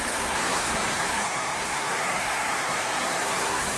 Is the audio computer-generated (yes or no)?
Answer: yes